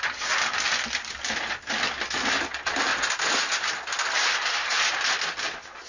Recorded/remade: recorded